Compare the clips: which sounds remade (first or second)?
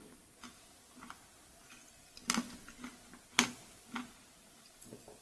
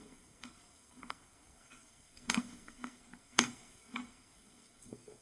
second